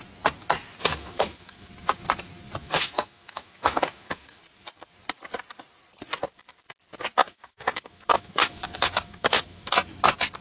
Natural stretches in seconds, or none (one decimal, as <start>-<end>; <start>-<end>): 0.0-0.8; 1.7-2.6; 4.4-7.2; 9.7-10.4